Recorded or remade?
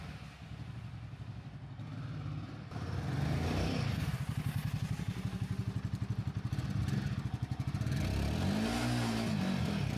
recorded